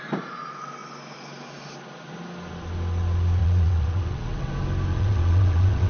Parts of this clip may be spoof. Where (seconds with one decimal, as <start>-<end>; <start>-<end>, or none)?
3.4-4.5; 4.9-5.9